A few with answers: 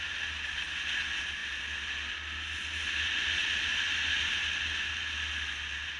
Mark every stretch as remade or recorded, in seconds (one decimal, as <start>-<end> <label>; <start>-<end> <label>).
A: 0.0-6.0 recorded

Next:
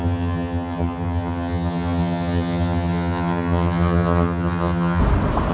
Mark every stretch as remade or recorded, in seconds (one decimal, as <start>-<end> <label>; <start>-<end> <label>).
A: 0.0-5.0 remade; 5.0-5.5 recorded

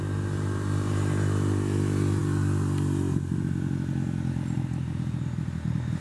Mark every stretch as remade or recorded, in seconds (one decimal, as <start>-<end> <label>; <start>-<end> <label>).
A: 0.0-6.0 recorded

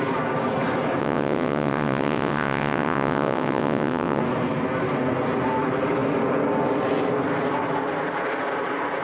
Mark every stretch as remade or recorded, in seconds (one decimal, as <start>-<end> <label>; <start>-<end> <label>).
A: 0.0-1.0 recorded; 1.0-4.2 remade; 4.2-9.0 recorded

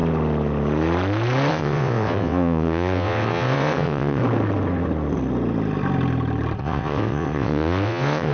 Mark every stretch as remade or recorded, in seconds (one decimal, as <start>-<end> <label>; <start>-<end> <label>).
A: 0.0-1.5 recorded; 1.5-4.2 remade; 4.2-6.6 recorded; 6.6-8.3 remade

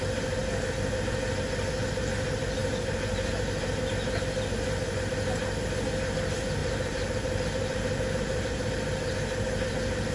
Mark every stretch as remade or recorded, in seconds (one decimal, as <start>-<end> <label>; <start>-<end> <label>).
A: 0.0-2.6 recorded; 2.6-3.8 remade; 3.8-6.6 recorded; 6.6-8.7 remade; 8.7-10.1 recorded

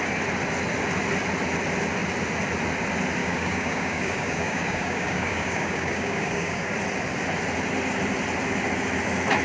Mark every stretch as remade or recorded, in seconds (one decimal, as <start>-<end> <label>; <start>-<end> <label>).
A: 0.0-3.2 recorded; 3.2-6.7 remade; 6.7-9.4 recorded